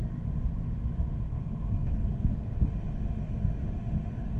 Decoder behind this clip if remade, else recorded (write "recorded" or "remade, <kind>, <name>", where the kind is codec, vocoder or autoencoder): remade, autoencoder, DAC-VAE